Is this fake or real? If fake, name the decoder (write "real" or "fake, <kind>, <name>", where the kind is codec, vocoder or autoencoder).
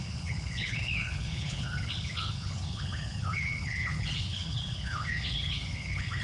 fake, codec, HILCodec